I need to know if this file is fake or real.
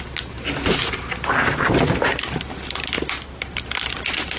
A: real